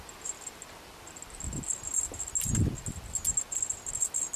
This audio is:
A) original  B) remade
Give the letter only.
A